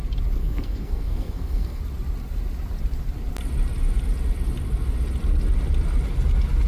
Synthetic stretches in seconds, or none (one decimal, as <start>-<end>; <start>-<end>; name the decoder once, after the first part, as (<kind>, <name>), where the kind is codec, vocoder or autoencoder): 0.4-1.8 (codec, SNAC)